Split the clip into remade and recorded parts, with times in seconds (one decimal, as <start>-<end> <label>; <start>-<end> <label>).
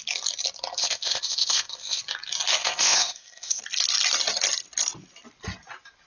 0.0-0.8 recorded; 0.8-2.0 remade; 2.0-2.6 recorded; 2.6-3.6 remade; 3.6-6.1 recorded